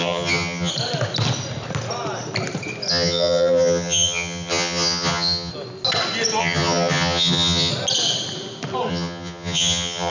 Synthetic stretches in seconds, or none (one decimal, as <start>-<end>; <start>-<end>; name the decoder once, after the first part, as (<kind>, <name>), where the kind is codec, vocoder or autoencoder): 0.0-0.7 (vocoder, HiFi-GAN); 2.9-5.5; 6.4-7.7; 8.9-10.1